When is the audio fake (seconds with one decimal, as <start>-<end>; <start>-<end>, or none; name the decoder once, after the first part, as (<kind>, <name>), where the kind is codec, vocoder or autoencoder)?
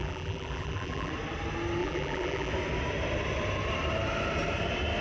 0.0-1.1 (vocoder, BigVGAN v2); 1.8-2.5